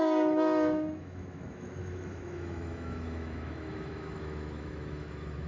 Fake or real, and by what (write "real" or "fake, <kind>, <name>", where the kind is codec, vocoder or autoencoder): fake, autoencoder, DAC-VAE